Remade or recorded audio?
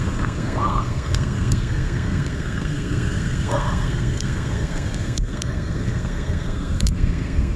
remade